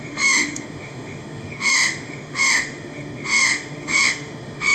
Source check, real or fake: fake